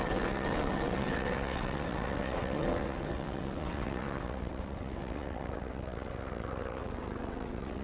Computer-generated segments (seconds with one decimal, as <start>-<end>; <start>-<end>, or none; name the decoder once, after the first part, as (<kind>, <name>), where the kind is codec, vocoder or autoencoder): 0.0-7.8 (vocoder, WaveNeXt)

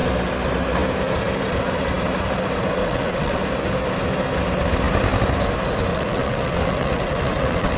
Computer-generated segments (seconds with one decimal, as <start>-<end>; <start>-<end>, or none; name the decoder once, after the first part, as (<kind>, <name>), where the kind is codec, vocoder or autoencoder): 2.8-3.4 (vocoder, WaveNeXt); 5.9-7.8

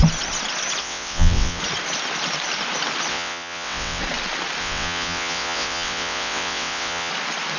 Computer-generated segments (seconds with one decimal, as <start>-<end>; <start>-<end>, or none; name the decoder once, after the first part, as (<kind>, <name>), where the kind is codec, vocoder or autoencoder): 0.8-1.6 (vocoder, WaveNeXt); 3.1-4.0; 4.6-7.1

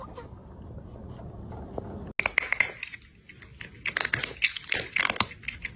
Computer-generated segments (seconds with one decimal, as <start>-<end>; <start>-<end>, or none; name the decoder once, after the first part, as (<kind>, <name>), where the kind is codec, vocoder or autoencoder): none

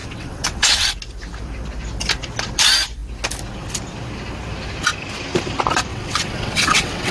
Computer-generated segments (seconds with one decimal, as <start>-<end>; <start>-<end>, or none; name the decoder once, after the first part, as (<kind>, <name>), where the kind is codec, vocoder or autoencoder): 0.0-0.9 (vocoder, WaveNeXt); 5.9-7.1

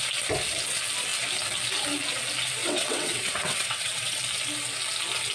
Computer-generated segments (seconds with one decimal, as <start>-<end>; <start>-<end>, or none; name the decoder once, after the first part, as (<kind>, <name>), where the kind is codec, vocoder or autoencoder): 2.6-4.2 (vocoder, WaveNeXt)